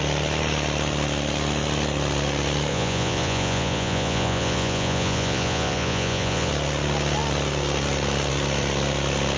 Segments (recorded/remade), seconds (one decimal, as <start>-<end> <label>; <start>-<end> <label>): 0.0-2.7 recorded; 2.7-6.5 remade; 6.5-9.4 recorded